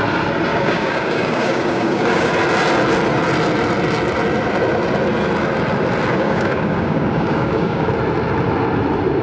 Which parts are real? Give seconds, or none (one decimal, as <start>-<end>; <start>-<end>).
0.0-0.5; 2.3-6.1; 7.9-9.2